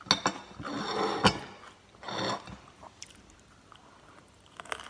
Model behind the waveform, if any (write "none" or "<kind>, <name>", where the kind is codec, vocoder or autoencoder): none